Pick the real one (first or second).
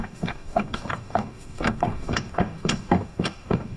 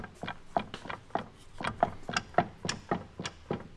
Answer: second